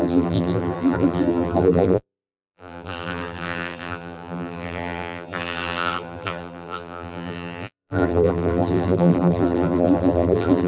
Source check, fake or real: fake